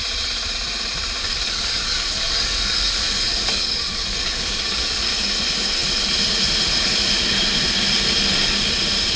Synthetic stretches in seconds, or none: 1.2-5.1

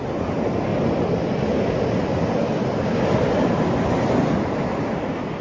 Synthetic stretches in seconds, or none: none

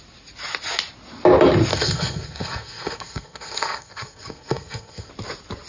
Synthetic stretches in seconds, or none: 1.7-5.1

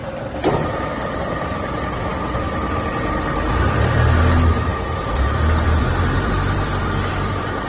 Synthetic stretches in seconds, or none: 0.7-2.1; 3.7-7.7

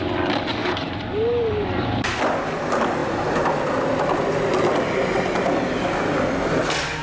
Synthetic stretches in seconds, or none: 0.6-2.0; 3.0-3.5